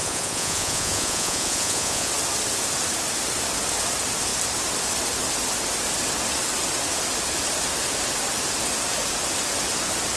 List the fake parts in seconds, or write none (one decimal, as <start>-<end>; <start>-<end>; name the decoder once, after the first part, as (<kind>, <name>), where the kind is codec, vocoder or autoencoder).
0.0-2.1 (vocoder, Vocos)